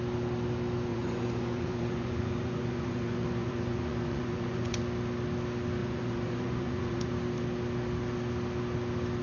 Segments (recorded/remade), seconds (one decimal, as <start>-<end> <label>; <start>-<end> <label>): 0.0-0.9 recorded; 0.9-4.8 remade; 4.8-5.8 recorded; 5.8-7.1 remade; 7.1-9.2 recorded